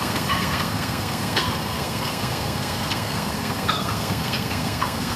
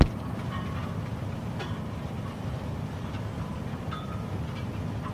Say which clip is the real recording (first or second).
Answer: second